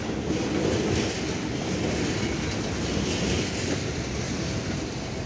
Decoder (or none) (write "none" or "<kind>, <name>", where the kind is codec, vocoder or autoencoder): none